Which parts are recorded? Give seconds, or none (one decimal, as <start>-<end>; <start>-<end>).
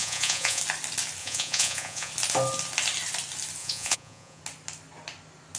0.6-1.2; 2.1-3.6; 4.4-5.6